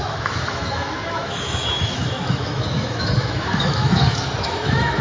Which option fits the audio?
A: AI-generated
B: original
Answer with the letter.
A